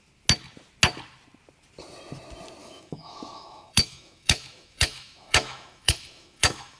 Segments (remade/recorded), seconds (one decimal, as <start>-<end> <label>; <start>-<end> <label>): 0.0-2.6 recorded; 2.6-6.8 remade